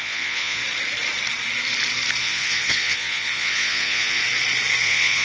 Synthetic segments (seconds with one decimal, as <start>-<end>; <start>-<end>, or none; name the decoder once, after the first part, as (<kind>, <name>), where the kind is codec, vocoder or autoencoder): 0.0-0.6 (vocoder, Vocos); 2.2-4.2; 4.8-5.2